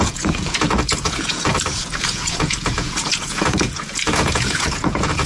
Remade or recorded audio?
remade